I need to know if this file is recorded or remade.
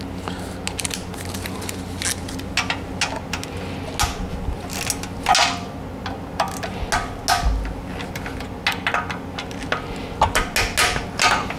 recorded